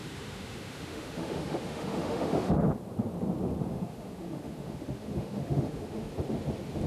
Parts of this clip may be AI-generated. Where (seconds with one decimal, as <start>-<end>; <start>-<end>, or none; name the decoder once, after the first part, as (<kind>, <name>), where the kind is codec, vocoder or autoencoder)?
0.0-2.5 (autoencoder, DAC-VAE); 3.7-6.1